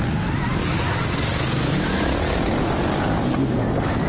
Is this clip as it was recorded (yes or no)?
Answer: yes